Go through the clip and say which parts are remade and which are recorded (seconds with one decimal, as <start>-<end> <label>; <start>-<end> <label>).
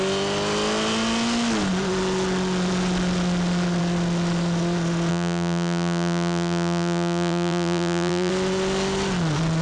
0.0-5.1 recorded; 5.1-8.3 remade; 8.3-9.6 recorded